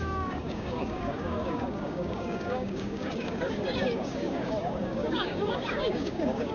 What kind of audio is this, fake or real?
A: fake